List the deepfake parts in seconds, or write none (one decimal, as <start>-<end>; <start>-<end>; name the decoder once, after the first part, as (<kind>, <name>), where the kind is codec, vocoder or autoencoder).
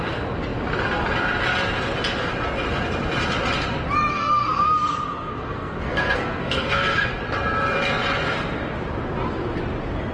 4.1-7.2 (codec, SNAC)